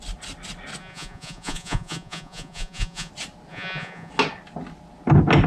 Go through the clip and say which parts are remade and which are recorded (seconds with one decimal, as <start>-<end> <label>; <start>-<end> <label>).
0.0-0.8 recorded; 0.8-3.1 remade; 3.1-3.5 recorded; 3.5-4.1 remade; 4.1-5.5 recorded